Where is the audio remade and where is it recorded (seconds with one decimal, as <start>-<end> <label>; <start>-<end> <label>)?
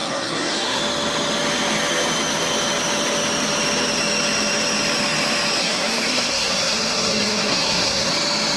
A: 0.0-0.8 remade; 0.8-5.6 recorded; 5.6-8.1 remade; 8.1-8.6 recorded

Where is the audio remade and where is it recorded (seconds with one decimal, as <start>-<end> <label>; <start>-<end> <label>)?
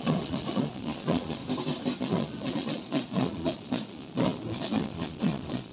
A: 0.0-1.4 remade; 1.4-2.0 recorded; 2.0-5.7 remade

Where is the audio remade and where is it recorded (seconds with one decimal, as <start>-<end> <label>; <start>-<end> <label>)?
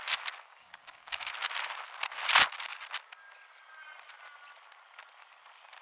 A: 0.0-0.6 recorded; 0.6-1.3 remade; 1.3-5.8 recorded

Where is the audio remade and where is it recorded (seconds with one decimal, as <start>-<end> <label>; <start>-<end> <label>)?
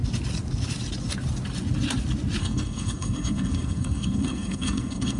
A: 0.0-2.4 recorded; 2.4-5.2 remade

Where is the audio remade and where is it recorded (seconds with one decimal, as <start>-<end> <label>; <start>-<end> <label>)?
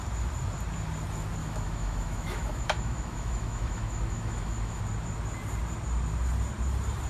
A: 0.0-1.4 recorded; 1.4-4.8 remade; 4.8-7.1 recorded